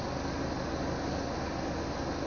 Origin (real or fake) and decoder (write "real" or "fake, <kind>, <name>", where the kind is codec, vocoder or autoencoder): real